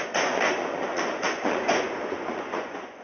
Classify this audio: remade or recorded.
remade